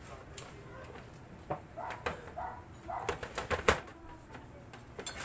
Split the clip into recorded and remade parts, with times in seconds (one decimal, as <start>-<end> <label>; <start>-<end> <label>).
0.0-5.2 recorded